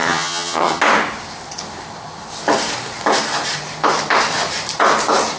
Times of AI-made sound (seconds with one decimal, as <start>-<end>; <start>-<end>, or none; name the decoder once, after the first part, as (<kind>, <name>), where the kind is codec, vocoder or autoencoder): 0.0-0.8 (vocoder, HiFi-GAN)